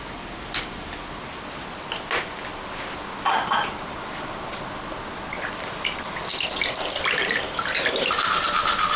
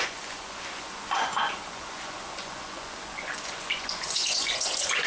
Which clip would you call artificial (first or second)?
second